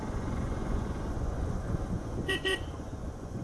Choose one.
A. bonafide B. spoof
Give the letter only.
B